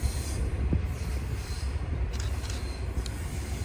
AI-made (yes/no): yes